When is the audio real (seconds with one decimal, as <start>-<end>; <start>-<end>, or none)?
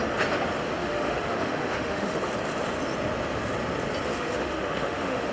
0.0-0.8; 2.2-4.1